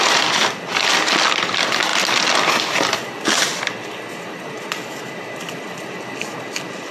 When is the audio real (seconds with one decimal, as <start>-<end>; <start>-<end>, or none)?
0.0-6.9